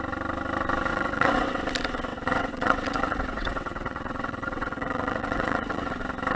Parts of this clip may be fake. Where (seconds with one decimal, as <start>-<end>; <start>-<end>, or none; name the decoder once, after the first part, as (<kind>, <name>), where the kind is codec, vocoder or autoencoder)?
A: 0.9-1.6 (vocoder, WaveNeXt); 2.1-5.9